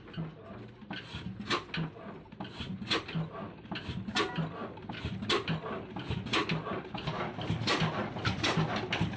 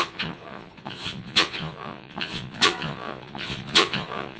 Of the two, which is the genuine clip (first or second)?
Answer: first